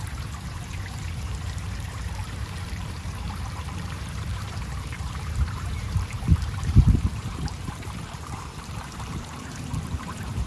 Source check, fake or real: fake